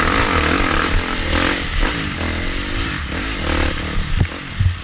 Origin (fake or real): real